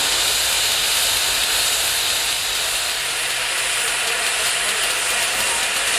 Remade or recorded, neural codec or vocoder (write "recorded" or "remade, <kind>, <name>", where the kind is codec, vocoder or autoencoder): recorded